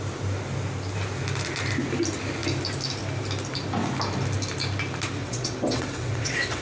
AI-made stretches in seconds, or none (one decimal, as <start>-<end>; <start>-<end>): 5.2-6.6